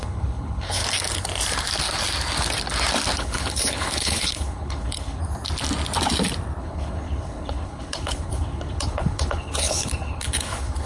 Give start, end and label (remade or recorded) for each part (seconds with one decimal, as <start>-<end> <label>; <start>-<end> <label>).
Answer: 0.0-0.8 remade; 0.8-3.2 recorded; 3.2-5.2 remade; 5.2-6.6 recorded; 6.6-10.9 remade